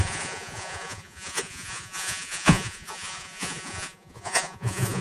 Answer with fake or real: fake